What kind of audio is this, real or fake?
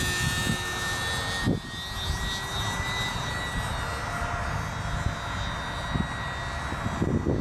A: real